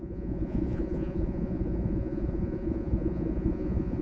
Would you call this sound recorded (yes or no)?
no